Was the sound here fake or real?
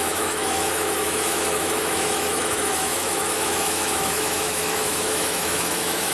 fake